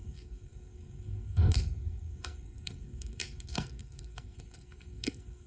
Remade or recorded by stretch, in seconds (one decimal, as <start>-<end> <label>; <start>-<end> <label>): 0.0-5.5 remade